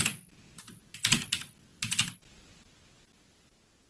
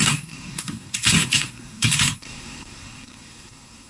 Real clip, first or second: first